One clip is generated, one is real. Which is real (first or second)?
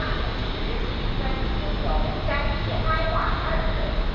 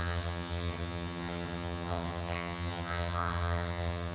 first